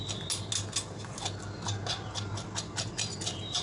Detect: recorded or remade recorded